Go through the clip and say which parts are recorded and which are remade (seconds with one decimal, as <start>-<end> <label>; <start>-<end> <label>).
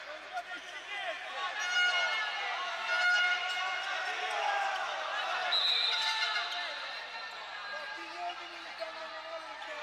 0.0-9.8 recorded